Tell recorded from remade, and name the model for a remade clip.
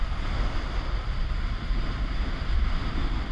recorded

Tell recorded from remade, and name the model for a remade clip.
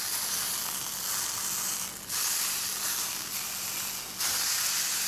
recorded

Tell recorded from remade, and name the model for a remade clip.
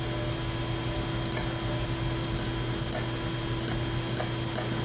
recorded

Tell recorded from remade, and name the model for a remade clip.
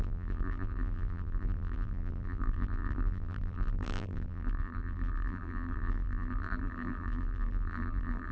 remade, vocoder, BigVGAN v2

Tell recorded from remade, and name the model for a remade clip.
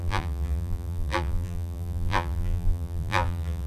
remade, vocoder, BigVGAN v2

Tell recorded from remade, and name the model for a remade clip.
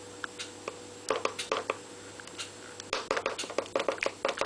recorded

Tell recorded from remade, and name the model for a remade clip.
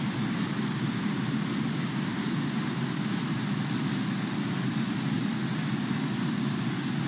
recorded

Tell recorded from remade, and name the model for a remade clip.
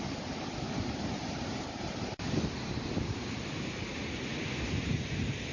remade, vocoder, BigVGAN v2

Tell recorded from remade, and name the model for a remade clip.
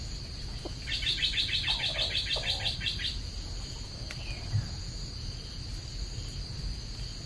recorded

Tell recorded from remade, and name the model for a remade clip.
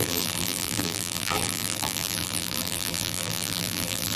remade, vocoder, BigVGAN v2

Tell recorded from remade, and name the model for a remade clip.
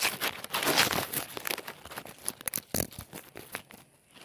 recorded